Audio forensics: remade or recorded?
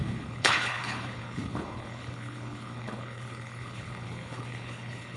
remade